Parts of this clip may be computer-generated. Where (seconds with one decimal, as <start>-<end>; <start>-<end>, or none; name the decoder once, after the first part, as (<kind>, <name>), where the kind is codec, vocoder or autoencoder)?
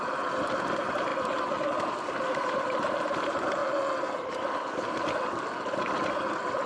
0.0-3.6 (vocoder, BigVGAN v2); 6.1-6.7